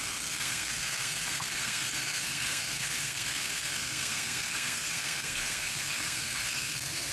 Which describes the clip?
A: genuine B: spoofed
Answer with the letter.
B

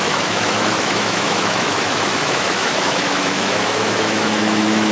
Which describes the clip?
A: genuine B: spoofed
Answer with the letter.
B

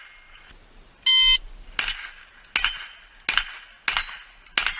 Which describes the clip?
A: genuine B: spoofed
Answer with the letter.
A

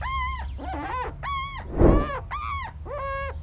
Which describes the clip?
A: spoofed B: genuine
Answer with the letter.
B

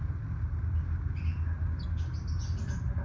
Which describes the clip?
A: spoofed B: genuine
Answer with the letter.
B